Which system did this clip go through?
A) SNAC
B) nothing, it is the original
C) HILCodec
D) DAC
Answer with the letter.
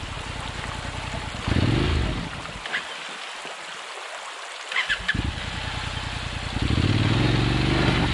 B